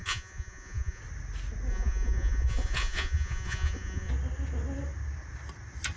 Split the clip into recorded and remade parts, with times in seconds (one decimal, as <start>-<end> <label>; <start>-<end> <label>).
0.0-1.0 remade; 1.0-1.7 recorded; 1.7-4.1 remade; 4.1-6.0 recorded